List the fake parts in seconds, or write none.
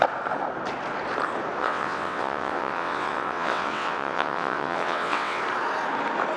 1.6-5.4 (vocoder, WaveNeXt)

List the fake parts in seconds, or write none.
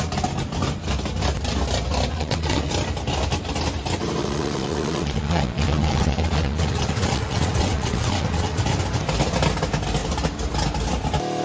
2.1-2.7 (vocoder, WaveNeXt); 4.2-8.6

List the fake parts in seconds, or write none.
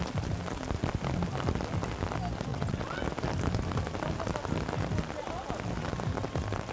2.5-3.0 (vocoder, WaveNeXt)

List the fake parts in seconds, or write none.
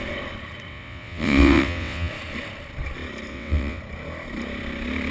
0.7-2.1 (vocoder, WaveNeXt); 3.3-3.8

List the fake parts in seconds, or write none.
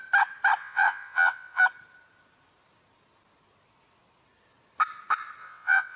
0.6-1.6 (vocoder, WaveNeXt); 5.4-6.0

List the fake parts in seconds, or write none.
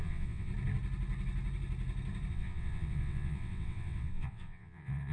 0.0-0.5 (vocoder, WaveNeXt); 2.3-5.1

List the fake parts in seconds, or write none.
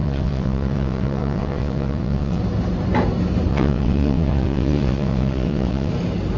0.0-2.4 (vocoder, WaveNeXt); 3.5-5.9